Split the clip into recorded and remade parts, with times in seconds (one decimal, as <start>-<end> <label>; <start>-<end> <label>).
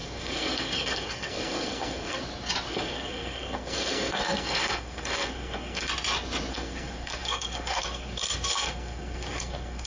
0.0-2.2 remade; 2.2-2.7 recorded; 2.7-5.9 remade; 5.9-6.5 recorded; 6.5-9.9 remade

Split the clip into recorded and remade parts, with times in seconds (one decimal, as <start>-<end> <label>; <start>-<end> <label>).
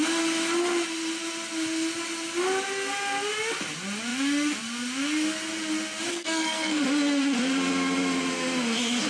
0.0-6.1 recorded; 6.1-6.8 remade; 6.8-9.1 recorded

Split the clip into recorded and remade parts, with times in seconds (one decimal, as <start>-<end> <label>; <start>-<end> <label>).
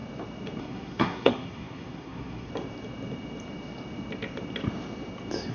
0.0-0.6 recorded; 0.6-2.5 remade; 2.5-5.5 recorded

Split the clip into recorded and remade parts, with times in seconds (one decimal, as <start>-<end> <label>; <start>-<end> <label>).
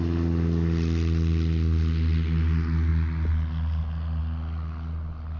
0.0-5.4 recorded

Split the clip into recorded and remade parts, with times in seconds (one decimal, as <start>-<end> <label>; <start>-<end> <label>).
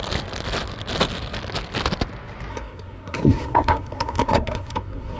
0.0-2.5 recorded; 2.5-5.2 remade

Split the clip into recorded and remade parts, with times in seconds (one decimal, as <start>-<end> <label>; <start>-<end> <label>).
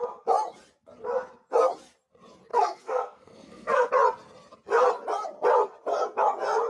0.0-2.5 recorded; 2.5-3.9 remade; 3.9-6.7 recorded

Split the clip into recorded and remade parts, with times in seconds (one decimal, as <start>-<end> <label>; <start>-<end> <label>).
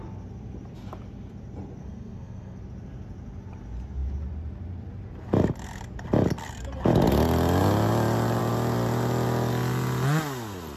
0.0-1.8 recorded; 1.8-2.6 remade; 2.6-10.8 recorded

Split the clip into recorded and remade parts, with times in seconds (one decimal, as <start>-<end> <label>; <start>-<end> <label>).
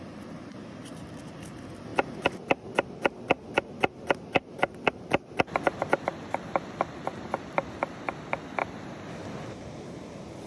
0.0-10.5 recorded